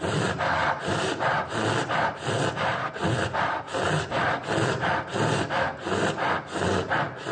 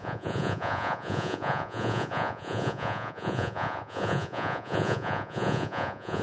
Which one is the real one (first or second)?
first